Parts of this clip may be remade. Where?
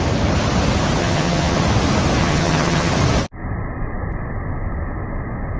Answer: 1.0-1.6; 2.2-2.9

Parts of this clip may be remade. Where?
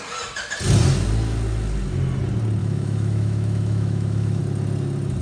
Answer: 2.6-4.4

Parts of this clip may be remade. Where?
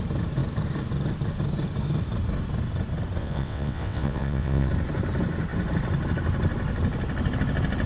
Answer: 3.2-4.7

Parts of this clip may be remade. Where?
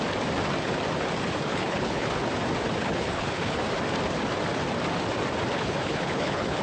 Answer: 1.5-2.1; 2.8-3.6; 5.5-6.6